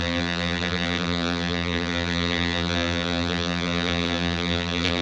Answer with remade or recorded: remade